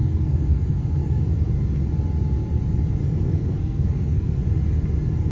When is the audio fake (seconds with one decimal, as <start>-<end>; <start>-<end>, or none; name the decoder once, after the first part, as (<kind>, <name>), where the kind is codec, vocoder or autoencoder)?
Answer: 0.0-1.2 (codec, SNAC); 3.0-4.4